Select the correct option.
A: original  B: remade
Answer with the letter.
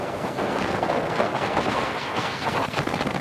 B